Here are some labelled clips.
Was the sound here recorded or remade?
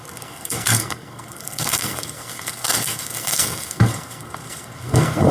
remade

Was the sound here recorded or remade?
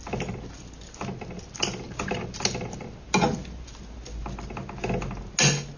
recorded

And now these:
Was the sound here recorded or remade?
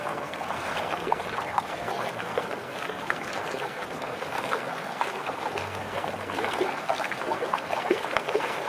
remade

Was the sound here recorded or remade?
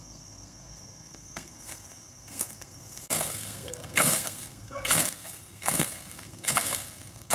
remade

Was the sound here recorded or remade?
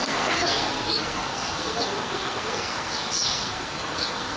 remade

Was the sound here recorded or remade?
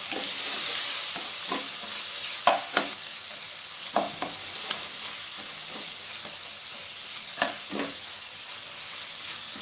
recorded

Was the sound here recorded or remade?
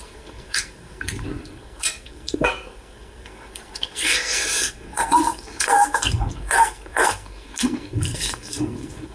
remade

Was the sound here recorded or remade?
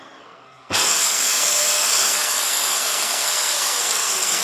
remade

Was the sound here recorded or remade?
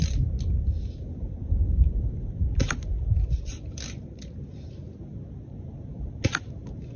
recorded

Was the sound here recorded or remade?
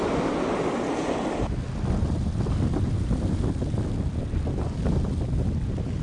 recorded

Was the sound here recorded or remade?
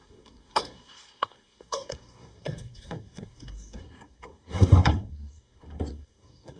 remade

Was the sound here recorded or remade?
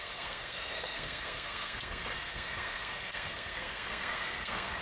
remade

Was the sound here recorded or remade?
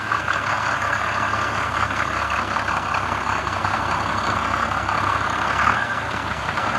remade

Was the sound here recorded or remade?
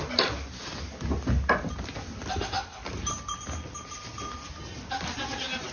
recorded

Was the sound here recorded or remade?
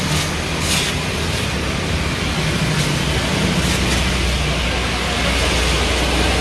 recorded